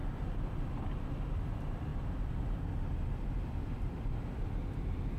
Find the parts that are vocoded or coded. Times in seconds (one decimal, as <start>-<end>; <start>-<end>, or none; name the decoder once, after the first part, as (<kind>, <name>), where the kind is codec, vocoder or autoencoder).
1.9-5.2 (vocoder, BigVGAN v2)